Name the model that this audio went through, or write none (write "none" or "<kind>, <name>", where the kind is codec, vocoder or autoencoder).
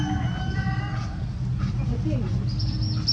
none